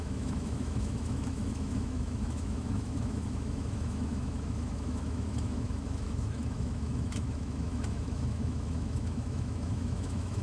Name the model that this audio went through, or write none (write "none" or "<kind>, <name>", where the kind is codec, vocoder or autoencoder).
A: autoencoder, DAC-VAE